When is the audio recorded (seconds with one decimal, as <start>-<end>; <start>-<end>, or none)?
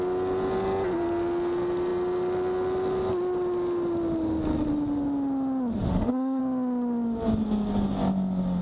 0.0-5.9; 6.4-8.6